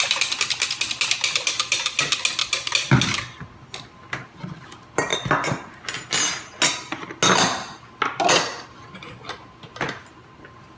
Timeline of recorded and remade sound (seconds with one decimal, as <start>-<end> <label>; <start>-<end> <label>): 0.0-10.8 recorded